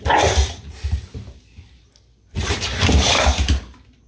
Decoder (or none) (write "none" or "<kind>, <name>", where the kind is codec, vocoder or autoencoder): none